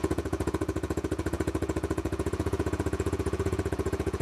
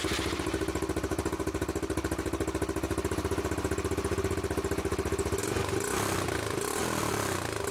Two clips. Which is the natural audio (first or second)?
second